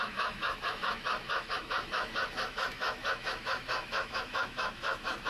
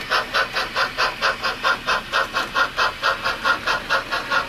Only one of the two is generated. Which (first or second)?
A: first